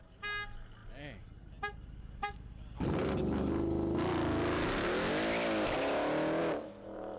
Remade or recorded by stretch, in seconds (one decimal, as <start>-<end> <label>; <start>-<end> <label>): 0.0-7.2 recorded